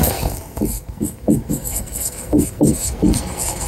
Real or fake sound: fake